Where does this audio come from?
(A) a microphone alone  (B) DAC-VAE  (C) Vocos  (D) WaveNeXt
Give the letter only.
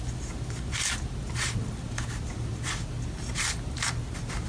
A